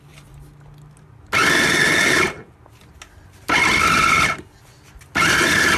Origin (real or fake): real